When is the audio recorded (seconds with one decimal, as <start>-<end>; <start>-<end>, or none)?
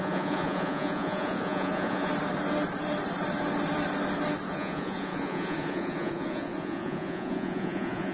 2.1-4.5